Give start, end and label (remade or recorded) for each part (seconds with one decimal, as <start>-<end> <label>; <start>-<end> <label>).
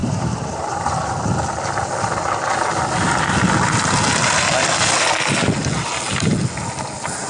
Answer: 0.0-0.9 remade; 0.9-7.3 recorded